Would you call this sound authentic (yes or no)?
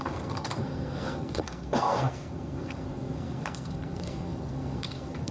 no